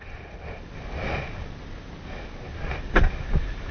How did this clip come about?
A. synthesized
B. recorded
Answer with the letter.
B